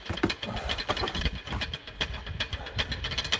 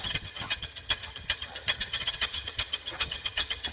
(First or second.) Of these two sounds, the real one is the first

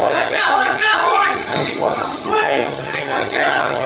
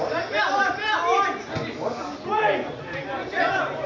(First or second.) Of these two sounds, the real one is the second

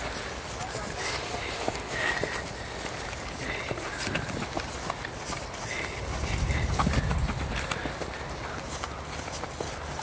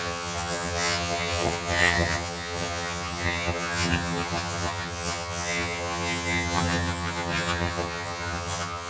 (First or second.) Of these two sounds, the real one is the first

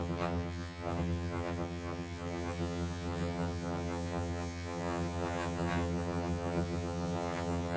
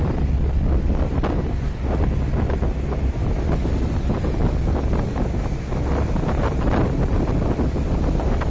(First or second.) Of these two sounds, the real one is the second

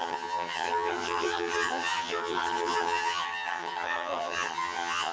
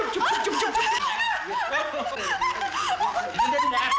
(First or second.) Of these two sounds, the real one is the second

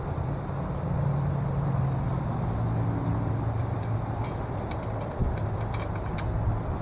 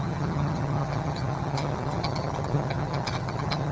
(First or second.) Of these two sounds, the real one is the first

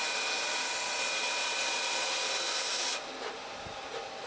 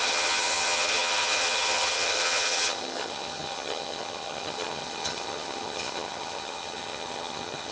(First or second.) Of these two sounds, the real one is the first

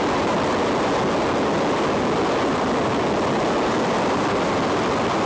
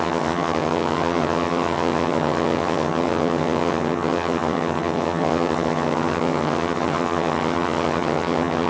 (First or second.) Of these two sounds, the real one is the first